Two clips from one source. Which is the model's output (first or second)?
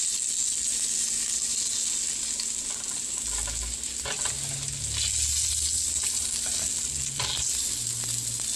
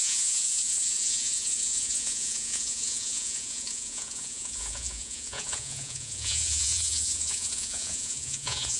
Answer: second